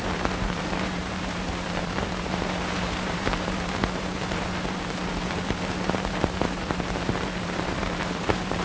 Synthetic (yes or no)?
yes